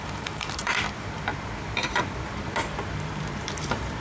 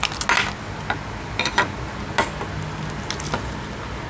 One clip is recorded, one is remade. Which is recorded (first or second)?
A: second